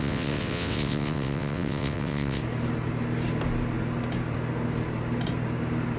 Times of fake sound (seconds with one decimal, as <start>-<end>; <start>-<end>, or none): 0.0-2.4